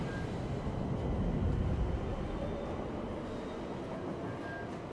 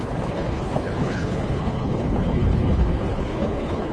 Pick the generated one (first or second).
second